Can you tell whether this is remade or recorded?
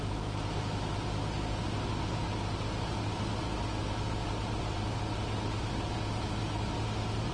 recorded